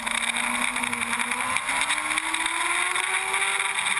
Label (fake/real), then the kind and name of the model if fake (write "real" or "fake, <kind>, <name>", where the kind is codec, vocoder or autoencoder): real